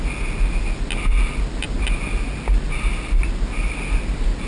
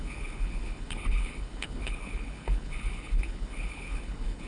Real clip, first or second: first